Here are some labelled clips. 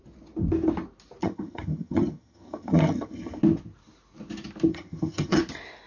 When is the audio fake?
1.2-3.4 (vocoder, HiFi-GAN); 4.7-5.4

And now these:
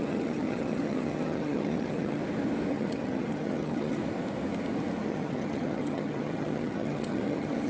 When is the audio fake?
0.0-2.2 (vocoder, HiFi-GAN); 2.7-4.0; 5.0-7.7

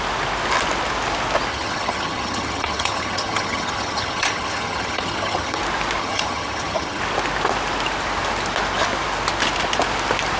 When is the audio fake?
1.5-5.6 (vocoder, HiFi-GAN); 6.0-7.0

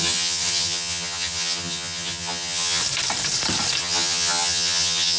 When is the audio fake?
0.0-2.8 (vocoder, HiFi-GAN); 3.8-5.2

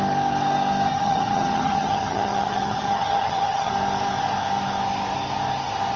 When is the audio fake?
0.9-3.7 (vocoder, HiFi-GAN)